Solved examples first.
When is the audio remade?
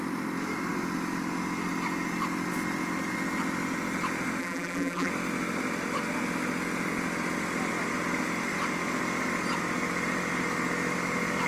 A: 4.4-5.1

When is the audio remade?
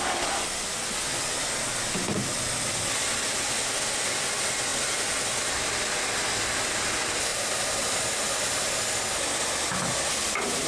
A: 7.3-8.0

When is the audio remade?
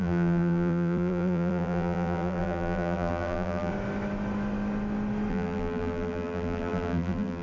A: 0.0-3.7; 5.3-7.4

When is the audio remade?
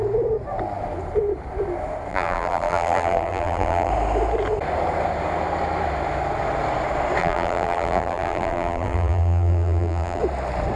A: 2.1-3.9; 7.2-10.2